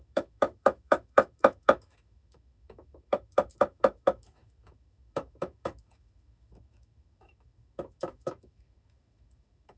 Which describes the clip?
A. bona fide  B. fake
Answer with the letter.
B